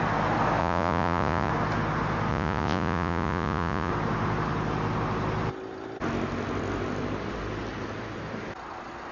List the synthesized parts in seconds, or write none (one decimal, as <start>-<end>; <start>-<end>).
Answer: 0.6-1.5; 2.3-3.9